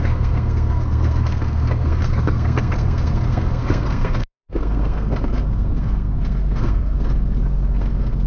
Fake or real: fake